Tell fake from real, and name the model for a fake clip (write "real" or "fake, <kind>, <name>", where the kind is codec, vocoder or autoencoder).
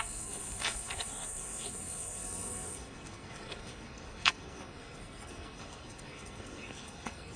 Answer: fake, codec, SNAC